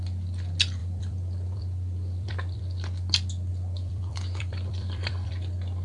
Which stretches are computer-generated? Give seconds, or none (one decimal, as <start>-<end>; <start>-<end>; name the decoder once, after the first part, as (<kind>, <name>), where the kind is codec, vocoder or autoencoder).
0.8-2.6 (vocoder, BigVGAN v2); 3.5-5.3